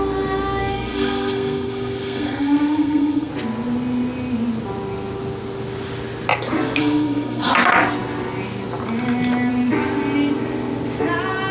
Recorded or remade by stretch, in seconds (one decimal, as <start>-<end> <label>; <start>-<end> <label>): 0.0-0.6 recorded; 0.6-3.3 remade; 3.3-6.8 recorded; 6.8-7.5 remade; 7.5-11.5 recorded